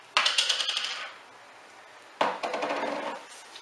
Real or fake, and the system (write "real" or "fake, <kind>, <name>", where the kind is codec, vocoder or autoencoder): real